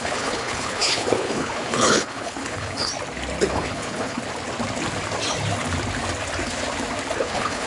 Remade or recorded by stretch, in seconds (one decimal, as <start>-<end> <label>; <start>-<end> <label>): 0.0-2.9 remade; 2.9-3.5 recorded; 3.5-4.2 remade; 4.2-7.2 recorded; 7.2-7.7 remade